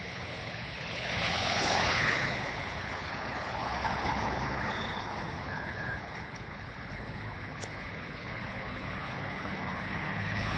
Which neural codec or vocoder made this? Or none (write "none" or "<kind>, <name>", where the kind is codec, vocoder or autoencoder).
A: codec, HILCodec